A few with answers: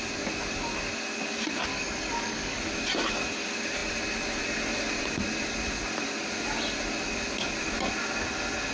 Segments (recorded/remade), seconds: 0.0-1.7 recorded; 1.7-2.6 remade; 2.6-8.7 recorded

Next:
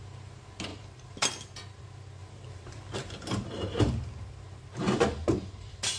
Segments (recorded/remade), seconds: 0.0-0.7 recorded; 0.7-1.2 remade; 1.2-2.2 recorded; 2.2-4.6 remade; 4.6-6.0 recorded

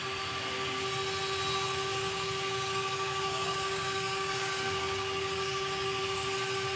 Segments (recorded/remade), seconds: 0.0-1.9 recorded; 1.9-6.0 remade; 6.0-6.8 recorded

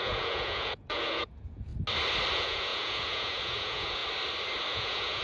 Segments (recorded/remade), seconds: 0.0-1.7 remade; 1.7-2.3 recorded; 2.3-4.0 remade; 4.0-4.7 recorded; 4.7-5.2 remade

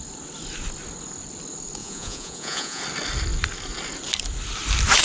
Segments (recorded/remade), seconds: 0.0-1.8 recorded; 1.8-2.8 remade; 2.8-5.0 recorded

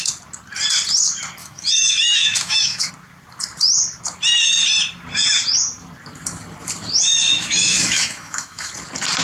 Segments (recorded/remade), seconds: 0.0-1.4 recorded; 1.4-2.9 remade; 2.9-7.3 recorded; 7.3-8.7 remade; 8.7-9.2 recorded

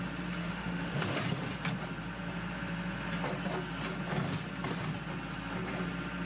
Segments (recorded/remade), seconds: 0.0-0.4 recorded; 0.4-1.2 remade; 1.2-6.3 recorded